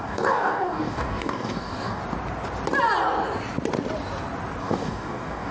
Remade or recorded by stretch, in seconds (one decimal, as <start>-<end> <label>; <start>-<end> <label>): 0.0-2.0 remade; 2.0-4.6 recorded; 4.6-5.5 remade